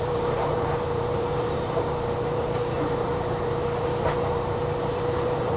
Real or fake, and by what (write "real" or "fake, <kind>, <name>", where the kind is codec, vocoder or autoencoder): fake, vocoder, BigVGAN v2